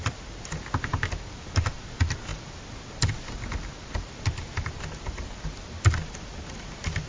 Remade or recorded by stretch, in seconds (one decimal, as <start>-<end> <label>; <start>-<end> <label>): 0.0-7.1 recorded